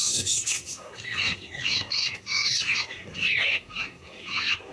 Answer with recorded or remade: remade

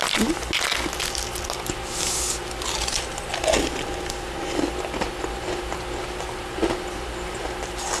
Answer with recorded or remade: recorded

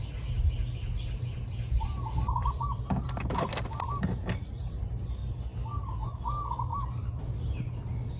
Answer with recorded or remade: recorded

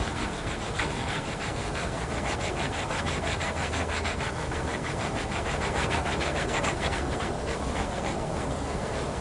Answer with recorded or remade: remade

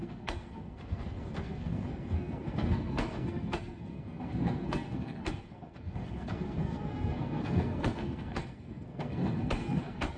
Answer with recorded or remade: remade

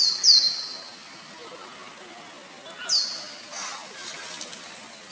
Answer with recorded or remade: recorded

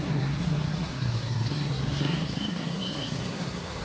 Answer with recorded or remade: remade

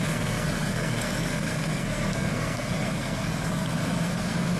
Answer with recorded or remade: remade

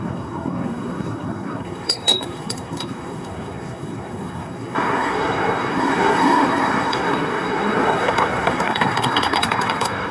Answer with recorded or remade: remade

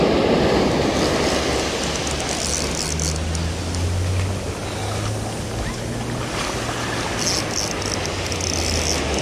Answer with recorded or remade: recorded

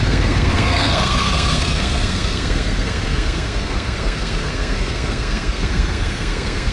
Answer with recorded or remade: remade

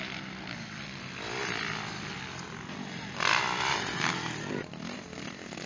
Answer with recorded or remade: recorded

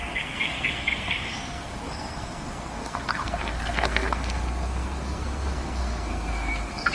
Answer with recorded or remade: remade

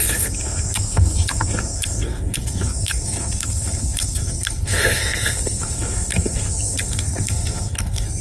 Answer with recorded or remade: remade